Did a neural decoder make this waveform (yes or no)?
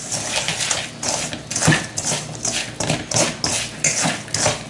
no